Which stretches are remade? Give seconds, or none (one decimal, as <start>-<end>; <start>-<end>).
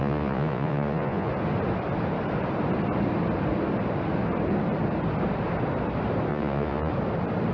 0.0-1.3; 6.3-6.9